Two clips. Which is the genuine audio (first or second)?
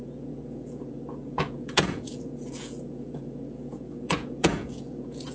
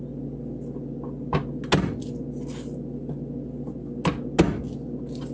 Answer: second